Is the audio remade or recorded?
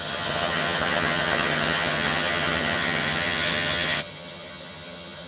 remade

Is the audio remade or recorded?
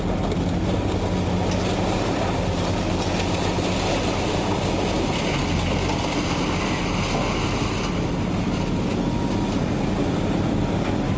recorded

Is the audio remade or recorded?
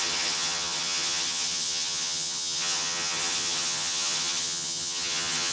remade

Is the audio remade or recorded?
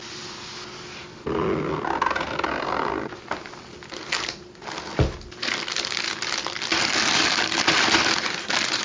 recorded